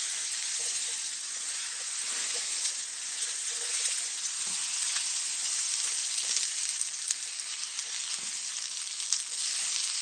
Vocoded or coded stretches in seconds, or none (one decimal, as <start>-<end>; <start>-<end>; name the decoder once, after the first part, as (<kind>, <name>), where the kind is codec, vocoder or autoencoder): 0.5-5.7 (vocoder, Vocos)